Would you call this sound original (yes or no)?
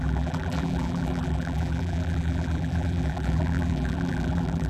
no